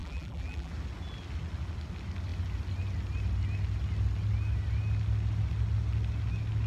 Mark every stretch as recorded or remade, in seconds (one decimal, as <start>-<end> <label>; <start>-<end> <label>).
0.0-0.7 remade; 0.7-6.7 recorded